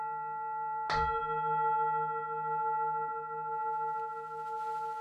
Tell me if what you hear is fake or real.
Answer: real